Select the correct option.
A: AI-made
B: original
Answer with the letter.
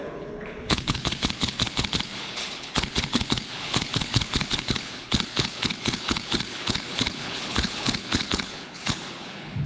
A